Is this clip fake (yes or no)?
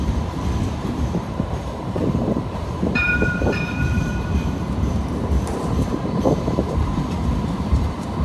yes